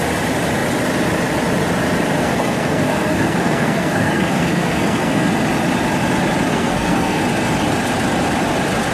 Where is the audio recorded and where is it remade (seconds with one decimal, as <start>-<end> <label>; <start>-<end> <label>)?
0.0-2.2 recorded; 2.2-5.3 remade; 5.3-6.5 recorded; 6.5-7.2 remade; 7.2-8.9 recorded